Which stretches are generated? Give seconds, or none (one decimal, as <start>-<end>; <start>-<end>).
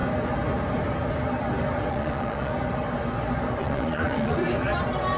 1.9-2.5; 3.6-4.4